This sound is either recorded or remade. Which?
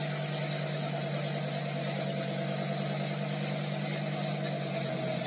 recorded